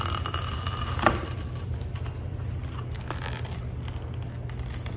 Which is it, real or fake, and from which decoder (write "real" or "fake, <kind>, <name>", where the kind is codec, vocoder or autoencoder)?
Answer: real